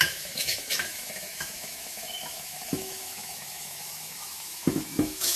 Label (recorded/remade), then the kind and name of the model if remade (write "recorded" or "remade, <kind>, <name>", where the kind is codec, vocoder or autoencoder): remade, autoencoder, DAC-VAE